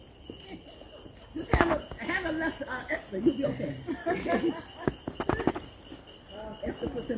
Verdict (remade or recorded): recorded